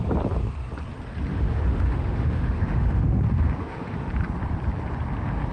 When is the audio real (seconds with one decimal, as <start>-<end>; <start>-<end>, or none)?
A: 0.0-1.3; 3.2-3.6; 4.1-5.5